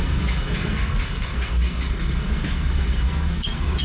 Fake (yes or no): yes